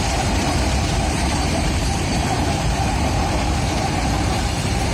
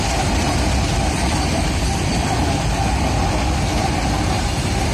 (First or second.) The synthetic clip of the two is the first